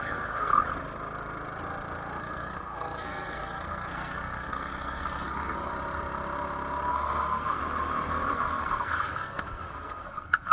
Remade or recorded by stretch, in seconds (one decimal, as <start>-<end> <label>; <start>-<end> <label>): 0.0-0.5 remade; 0.5-2.2 recorded; 2.2-5.7 remade; 5.7-6.9 recorded; 6.9-7.6 remade; 7.6-8.3 recorded; 8.3-10.5 remade